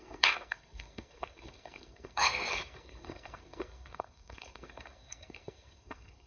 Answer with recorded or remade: remade